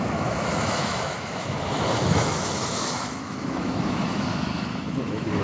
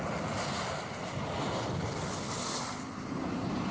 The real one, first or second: second